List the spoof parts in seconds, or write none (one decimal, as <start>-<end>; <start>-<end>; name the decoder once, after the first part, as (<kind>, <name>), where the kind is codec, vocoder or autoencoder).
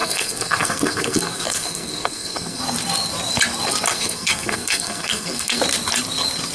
0.0-2.6 (codec, SNAC); 3.9-5.6